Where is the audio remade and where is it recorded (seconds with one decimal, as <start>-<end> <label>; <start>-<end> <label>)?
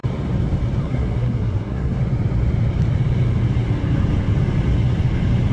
0.0-0.8 recorded; 0.8-2.0 remade; 2.0-5.5 recorded